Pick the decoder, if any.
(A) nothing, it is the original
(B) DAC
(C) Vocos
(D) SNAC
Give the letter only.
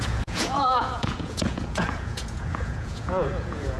C